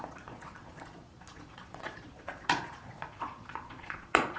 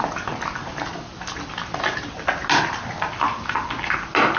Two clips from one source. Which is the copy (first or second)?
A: first